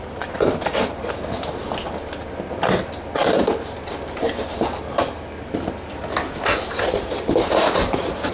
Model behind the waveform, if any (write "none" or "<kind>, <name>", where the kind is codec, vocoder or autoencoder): none